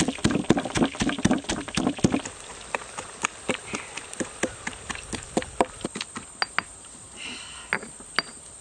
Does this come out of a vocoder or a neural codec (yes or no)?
no